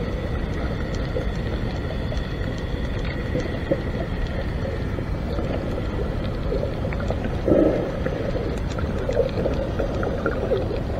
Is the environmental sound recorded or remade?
recorded